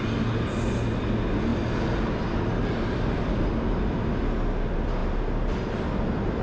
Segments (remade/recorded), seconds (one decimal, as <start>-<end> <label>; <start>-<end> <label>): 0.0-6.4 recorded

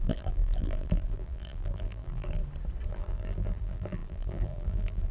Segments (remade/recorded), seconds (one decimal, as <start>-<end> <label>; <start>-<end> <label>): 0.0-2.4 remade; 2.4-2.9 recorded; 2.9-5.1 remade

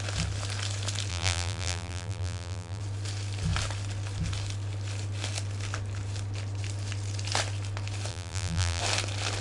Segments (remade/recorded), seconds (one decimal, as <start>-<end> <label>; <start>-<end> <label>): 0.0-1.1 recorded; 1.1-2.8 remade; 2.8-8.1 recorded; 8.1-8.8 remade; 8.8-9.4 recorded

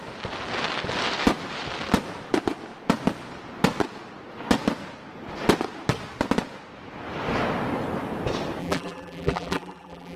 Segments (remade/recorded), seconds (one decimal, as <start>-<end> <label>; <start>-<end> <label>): 0.0-8.6 recorded; 8.6-10.2 remade

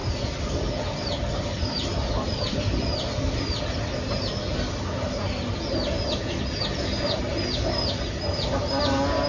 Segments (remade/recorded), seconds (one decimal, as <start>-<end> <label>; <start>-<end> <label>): 0.0-3.4 remade; 3.4-9.3 recorded

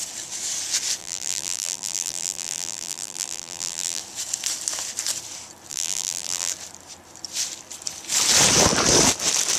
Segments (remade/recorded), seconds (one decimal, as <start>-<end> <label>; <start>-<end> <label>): 0.0-1.0 recorded; 1.0-4.0 remade; 4.0-5.7 recorded; 5.7-6.5 remade; 6.5-9.6 recorded

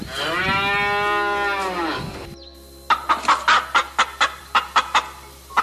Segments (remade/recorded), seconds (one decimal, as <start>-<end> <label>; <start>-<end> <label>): 0.0-5.6 recorded

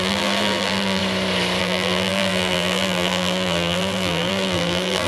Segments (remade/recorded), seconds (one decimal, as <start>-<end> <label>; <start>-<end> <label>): 0.0-1.0 remade; 1.0-1.6 recorded; 1.6-5.1 remade